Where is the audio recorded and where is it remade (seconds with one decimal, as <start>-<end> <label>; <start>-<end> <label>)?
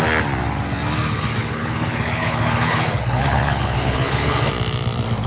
0.0-1.4 recorded; 1.4-4.5 remade; 4.5-5.3 recorded